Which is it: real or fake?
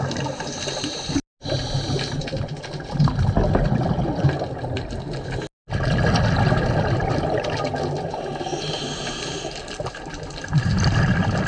real